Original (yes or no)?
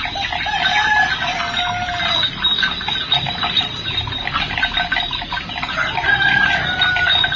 yes